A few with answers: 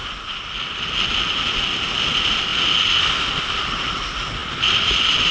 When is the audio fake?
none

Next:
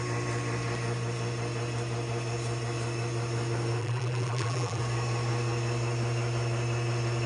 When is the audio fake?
3.8-4.8 (vocoder, BigVGAN v2)

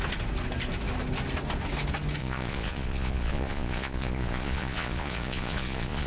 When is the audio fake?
2.2-6.1 (vocoder, Vocos)

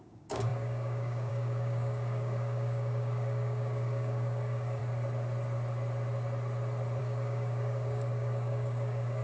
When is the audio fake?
0.0-4.8 (codec, DAC); 7.0-9.2